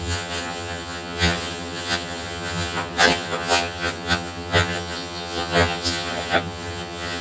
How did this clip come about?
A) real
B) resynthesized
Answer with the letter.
B